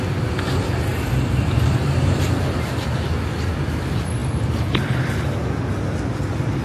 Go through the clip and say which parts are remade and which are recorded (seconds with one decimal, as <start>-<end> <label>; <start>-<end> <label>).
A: 0.0-0.9 recorded; 0.9-2.4 remade; 2.4-6.6 recorded